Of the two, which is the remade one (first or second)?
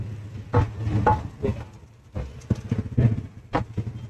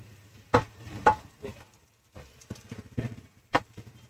second